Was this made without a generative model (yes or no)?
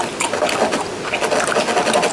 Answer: yes